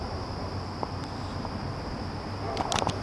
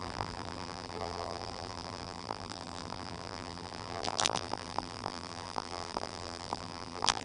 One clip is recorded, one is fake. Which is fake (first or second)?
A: second